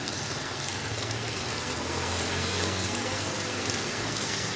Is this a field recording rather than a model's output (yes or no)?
no